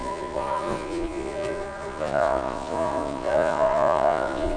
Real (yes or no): no